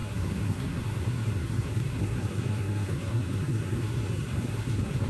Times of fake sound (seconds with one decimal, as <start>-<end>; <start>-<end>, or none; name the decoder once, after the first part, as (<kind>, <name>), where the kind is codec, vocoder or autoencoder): 0.0-5.1 (codec, SNAC)